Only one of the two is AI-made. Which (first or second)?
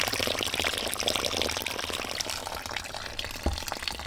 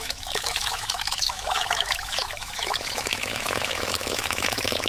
second